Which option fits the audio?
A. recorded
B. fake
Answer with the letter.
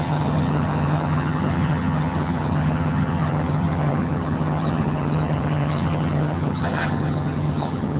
B